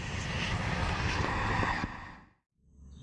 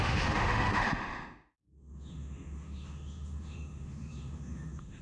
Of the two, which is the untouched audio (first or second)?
first